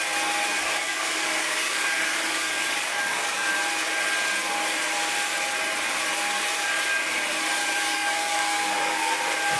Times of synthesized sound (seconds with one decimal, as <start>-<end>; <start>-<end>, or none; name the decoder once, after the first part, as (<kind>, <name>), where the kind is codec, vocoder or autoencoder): 0.6-3.5 (codec, DAC); 7.6-9.1